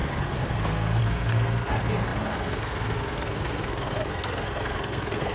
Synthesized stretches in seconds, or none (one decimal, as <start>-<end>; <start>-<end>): 0.0-5.3